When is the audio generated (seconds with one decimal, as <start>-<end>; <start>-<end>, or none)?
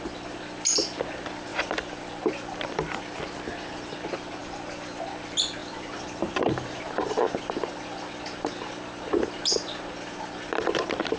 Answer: 1.5-3.0; 4.4-5.0; 5.6-7.7